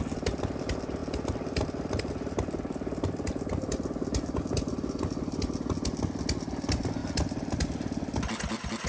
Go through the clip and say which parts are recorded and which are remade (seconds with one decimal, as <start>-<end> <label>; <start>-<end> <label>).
0.0-8.9 recorded